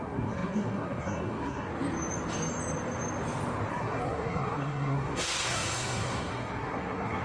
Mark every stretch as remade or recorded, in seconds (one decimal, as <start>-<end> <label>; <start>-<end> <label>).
0.0-1.7 remade; 1.7-3.7 recorded; 3.7-7.2 remade

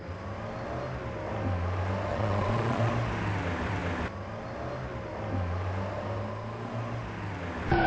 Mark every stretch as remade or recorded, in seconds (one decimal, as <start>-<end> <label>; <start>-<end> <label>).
0.0-2.1 recorded; 2.1-2.9 remade; 2.9-7.9 recorded

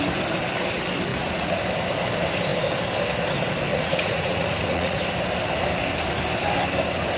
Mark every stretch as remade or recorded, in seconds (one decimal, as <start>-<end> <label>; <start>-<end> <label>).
0.0-1.1 recorded; 1.1-1.6 remade; 1.6-3.7 recorded; 3.7-5.0 remade; 5.0-7.2 recorded

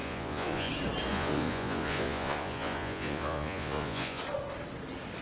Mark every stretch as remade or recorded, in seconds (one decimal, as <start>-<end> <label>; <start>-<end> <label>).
0.0-0.7 remade; 0.7-1.1 recorded; 1.1-4.2 remade; 4.2-5.2 recorded

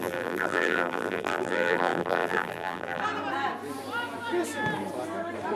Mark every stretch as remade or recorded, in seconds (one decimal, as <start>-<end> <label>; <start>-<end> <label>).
0.0-3.0 remade; 3.0-5.6 recorded

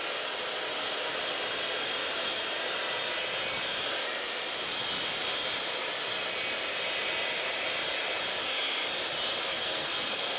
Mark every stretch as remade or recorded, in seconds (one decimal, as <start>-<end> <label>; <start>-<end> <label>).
0.0-9.5 recorded; 9.5-10.4 remade